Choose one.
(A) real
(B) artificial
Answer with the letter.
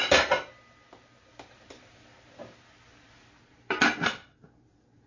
A